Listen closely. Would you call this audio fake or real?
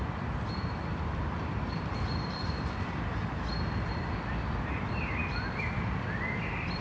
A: fake